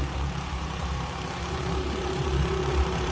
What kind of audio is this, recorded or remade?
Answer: remade